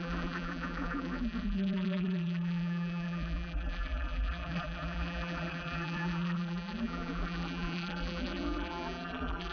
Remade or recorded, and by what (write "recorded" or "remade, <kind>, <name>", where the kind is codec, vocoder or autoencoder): remade, vocoder, BigVGAN v2